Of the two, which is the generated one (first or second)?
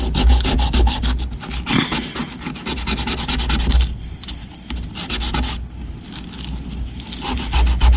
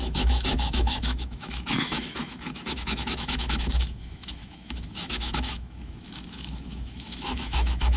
second